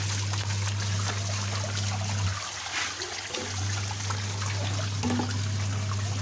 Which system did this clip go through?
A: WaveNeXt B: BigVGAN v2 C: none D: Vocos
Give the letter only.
C